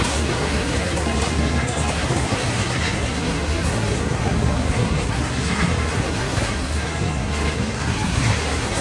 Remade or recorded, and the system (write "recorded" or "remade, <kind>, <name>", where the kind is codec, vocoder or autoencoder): remade, codec, SNAC